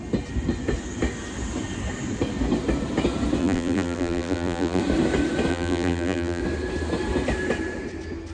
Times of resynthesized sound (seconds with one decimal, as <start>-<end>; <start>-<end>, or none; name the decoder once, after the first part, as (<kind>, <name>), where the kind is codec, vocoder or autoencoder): 3.4-4.8 (vocoder, BigVGAN v2); 5.5-6.4